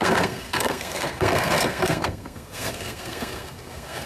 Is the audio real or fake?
fake